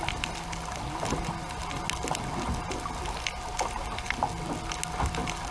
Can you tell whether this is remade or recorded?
recorded